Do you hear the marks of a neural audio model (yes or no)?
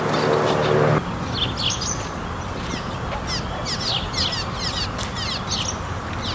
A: no